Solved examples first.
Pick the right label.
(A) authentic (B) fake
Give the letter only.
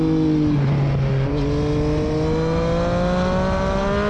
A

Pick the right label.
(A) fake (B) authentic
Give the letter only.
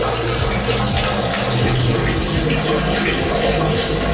B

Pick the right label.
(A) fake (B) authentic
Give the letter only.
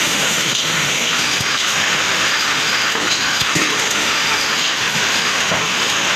A